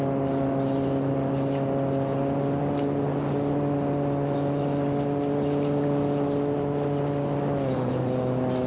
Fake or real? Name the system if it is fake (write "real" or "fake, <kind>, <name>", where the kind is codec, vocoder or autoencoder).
real